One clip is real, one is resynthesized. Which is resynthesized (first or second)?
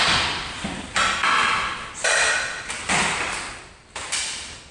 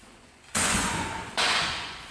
second